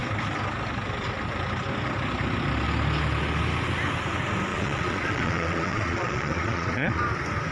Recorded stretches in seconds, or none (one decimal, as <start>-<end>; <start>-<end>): 0.0-4.5; 7.0-7.5